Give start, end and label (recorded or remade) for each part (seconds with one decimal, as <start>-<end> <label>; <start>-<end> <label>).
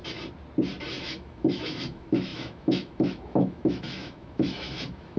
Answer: 0.0-1.0 recorded; 1.0-5.2 remade